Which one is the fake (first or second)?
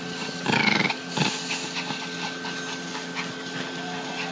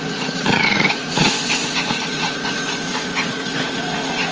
second